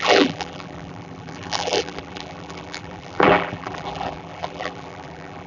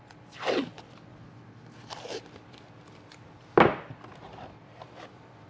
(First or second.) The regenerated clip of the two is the first